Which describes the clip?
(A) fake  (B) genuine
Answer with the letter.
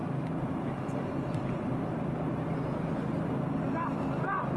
B